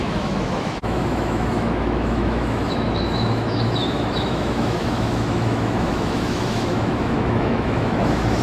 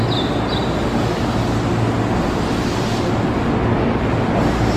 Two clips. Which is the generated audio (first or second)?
first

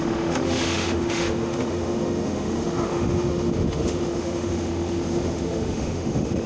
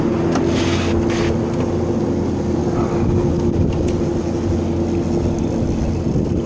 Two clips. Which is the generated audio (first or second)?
first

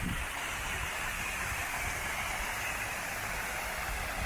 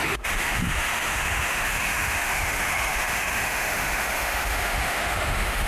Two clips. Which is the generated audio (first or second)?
second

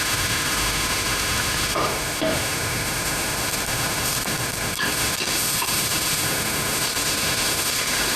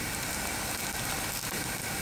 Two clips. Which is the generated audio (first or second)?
first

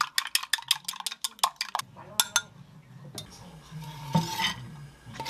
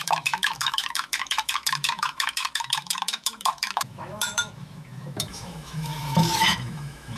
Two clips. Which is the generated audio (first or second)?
second